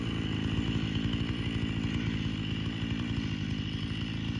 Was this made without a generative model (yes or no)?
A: yes